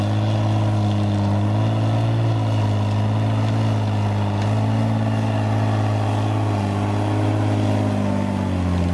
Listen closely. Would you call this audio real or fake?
real